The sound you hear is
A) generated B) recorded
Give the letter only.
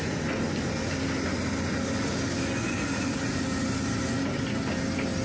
B